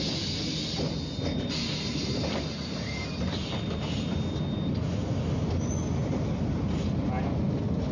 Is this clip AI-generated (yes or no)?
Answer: no